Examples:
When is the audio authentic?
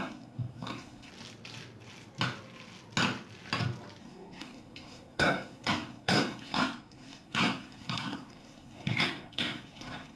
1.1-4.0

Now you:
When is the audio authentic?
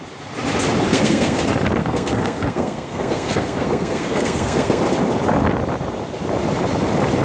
0.0-0.9; 1.4-1.8; 4.8-7.2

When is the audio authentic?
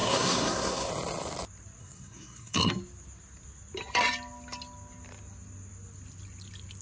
0.9-1.8; 2.7-6.8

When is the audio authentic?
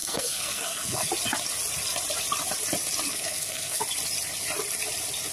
1.1-3.1; 3.8-5.3